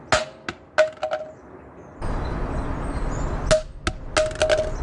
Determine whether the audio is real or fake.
real